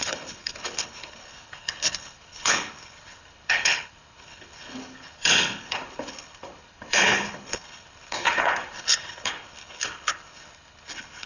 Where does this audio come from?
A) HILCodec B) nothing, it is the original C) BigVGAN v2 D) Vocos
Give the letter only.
A